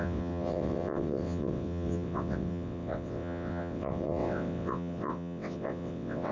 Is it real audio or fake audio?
fake